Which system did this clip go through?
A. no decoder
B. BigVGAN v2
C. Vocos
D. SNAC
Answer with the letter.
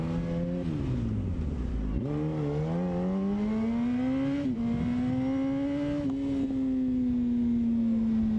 A